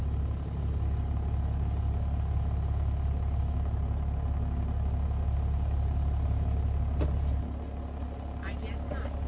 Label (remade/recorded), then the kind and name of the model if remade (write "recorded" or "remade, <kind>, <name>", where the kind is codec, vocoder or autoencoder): recorded